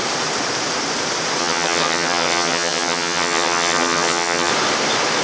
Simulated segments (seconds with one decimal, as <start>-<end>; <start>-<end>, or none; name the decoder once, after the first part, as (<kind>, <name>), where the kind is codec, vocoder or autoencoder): 1.4-4.5 (vocoder, HiFi-GAN)